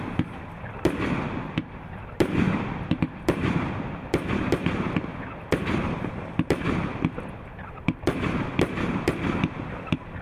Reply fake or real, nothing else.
real